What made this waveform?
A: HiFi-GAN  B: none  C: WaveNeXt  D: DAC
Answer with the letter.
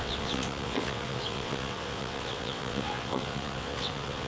C